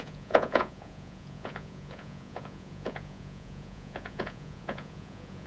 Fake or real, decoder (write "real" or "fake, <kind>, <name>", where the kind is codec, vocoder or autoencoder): fake, vocoder, Vocos